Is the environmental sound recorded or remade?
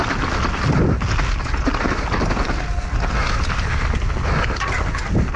recorded